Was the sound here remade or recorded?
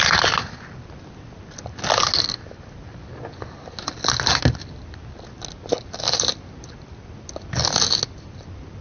recorded